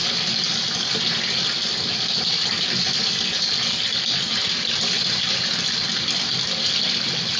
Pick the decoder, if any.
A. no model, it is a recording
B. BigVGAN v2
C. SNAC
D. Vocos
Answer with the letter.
A